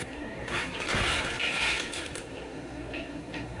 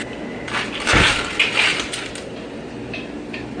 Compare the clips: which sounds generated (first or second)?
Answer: first